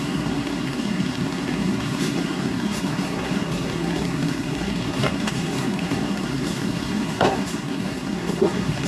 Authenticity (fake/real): fake